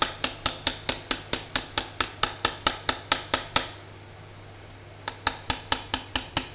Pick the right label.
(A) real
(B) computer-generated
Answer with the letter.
A